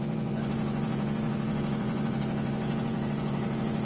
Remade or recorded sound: remade